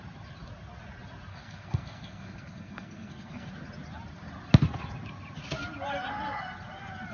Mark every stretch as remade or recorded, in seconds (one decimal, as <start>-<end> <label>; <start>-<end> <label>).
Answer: 0.0-1.3 recorded; 1.3-3.5 remade; 3.5-7.1 recorded